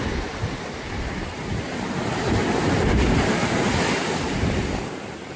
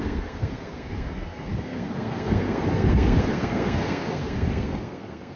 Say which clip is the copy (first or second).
second